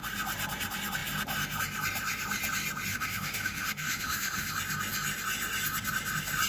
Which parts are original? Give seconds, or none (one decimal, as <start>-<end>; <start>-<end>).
0.0-2.9; 4.5-6.5